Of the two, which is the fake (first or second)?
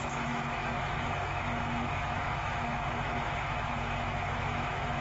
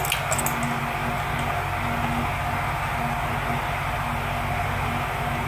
first